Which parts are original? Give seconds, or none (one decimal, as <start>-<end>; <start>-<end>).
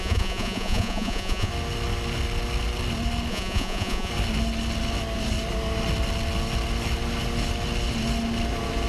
1.5-3.3; 4.1-8.9